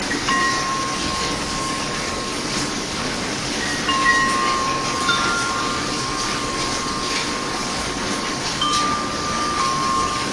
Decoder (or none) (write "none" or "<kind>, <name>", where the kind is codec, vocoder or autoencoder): codec, DAC